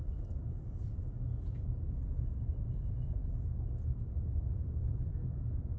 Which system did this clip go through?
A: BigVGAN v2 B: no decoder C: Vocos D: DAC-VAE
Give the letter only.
A